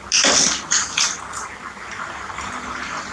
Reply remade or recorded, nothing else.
recorded